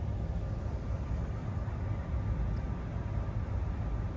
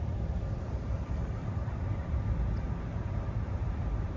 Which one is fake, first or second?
second